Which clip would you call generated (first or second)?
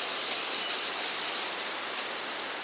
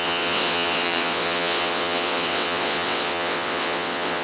second